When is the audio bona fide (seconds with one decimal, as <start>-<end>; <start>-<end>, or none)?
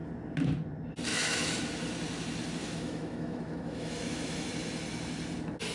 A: 0.0-1.1; 1.6-2.6; 4.5-5.7